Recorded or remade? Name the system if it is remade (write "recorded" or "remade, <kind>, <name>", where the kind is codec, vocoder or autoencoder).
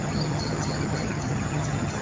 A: remade, vocoder, HiFi-GAN